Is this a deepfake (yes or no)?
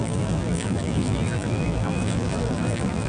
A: yes